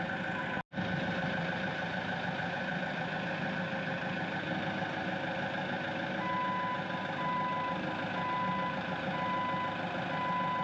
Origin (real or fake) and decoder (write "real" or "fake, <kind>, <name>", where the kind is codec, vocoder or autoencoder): real